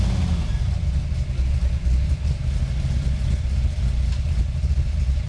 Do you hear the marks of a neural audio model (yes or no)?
no